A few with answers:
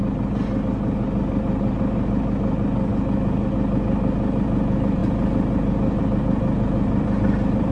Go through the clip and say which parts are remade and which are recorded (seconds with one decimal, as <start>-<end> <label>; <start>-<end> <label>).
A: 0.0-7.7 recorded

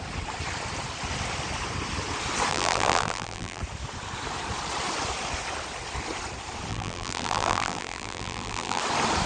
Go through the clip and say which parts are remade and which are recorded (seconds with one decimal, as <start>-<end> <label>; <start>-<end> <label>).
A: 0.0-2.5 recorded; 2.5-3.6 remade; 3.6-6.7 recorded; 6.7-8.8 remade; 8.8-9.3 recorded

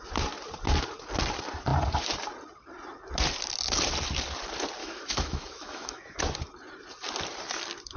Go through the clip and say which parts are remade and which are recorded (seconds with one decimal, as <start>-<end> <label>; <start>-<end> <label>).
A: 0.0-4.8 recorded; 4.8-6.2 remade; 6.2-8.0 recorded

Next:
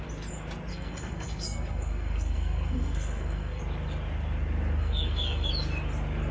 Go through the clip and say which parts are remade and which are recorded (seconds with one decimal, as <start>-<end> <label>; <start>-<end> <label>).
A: 0.0-0.7 recorded; 0.7-3.6 remade; 3.6-4.8 recorded; 4.8-5.5 remade; 5.5-6.3 recorded

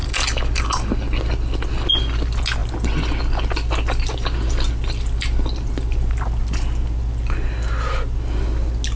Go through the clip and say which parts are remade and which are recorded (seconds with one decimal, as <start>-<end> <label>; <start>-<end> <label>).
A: 0.0-9.0 recorded

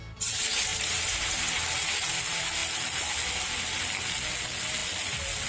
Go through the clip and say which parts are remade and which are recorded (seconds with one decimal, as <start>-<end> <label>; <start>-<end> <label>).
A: 0.0-5.5 recorded

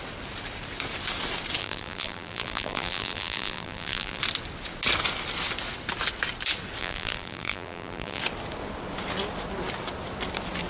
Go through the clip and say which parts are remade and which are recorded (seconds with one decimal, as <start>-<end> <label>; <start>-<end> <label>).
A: 0.0-1.6 recorded; 1.6-4.2 remade; 4.2-6.8 recorded; 6.8-8.2 remade; 8.2-10.7 recorded

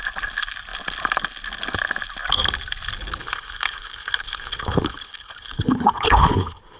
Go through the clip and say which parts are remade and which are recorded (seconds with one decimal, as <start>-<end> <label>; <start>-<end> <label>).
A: 0.0-3.2 recorded; 3.2-6.8 remade